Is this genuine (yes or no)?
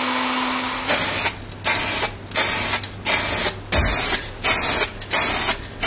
yes